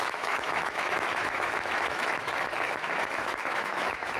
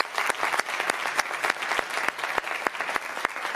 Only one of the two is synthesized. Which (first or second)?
first